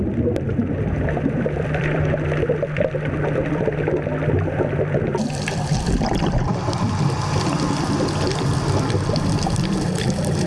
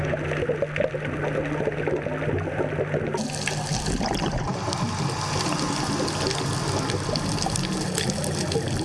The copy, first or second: first